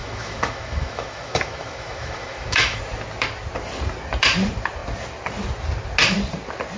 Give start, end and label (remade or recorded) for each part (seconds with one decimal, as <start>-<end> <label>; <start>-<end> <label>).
0.0-2.8 remade; 2.8-6.8 recorded